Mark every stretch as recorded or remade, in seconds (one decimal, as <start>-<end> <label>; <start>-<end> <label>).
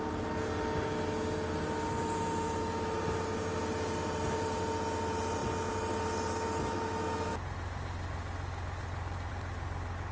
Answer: 0.0-10.1 recorded